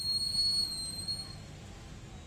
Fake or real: real